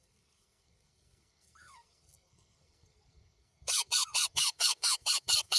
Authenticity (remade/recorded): remade